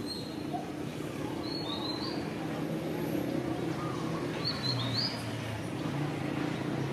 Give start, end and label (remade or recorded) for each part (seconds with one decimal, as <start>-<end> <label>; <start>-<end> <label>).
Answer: 0.0-6.9 recorded